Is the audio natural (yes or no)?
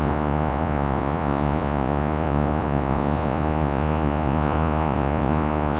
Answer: no